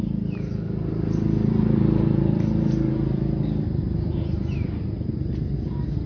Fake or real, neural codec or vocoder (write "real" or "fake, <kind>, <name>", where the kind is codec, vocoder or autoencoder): real